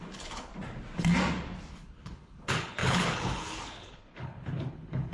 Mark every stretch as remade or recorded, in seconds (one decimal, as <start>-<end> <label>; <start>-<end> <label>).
0.0-0.5 remade; 0.5-1.7 recorded; 1.7-5.1 remade